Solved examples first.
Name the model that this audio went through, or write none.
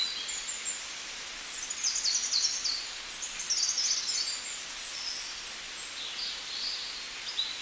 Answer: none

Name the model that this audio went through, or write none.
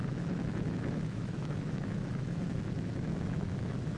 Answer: autoencoder, DAC-VAE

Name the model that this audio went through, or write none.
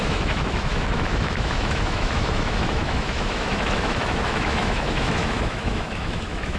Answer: autoencoder, DAC-VAE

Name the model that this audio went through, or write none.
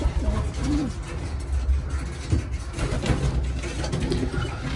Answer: none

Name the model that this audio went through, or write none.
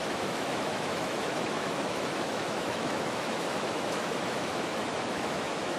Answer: autoencoder, DAC-VAE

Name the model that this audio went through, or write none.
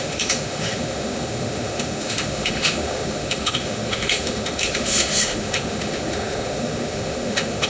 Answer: autoencoder, DAC-VAE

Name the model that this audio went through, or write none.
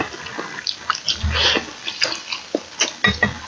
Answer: none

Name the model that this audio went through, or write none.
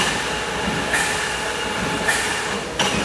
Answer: none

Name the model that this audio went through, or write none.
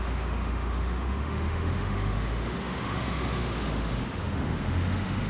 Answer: autoencoder, DAC-VAE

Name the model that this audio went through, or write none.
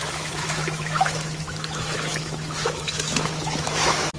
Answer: autoencoder, DAC-VAE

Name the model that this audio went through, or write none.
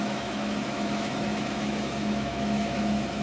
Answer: autoencoder, DAC-VAE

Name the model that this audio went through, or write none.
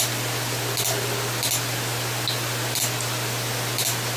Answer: none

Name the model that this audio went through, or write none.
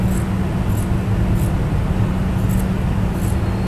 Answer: none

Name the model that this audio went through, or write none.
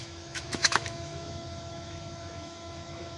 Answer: autoencoder, DAC-VAE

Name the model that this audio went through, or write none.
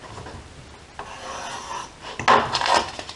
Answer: none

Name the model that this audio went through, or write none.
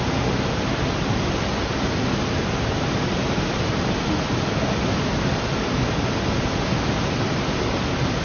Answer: none